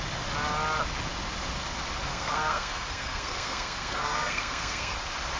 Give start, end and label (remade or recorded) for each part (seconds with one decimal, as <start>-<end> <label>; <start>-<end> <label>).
0.0-2.1 recorded; 2.1-4.9 remade; 4.9-5.4 recorded